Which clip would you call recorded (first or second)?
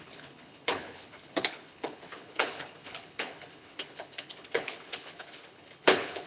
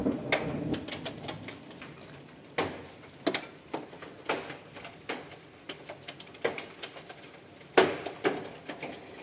second